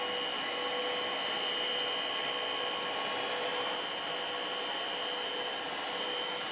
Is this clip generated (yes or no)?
no